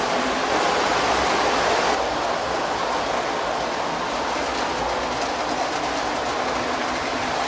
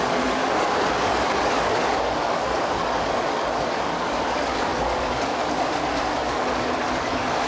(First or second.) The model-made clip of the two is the second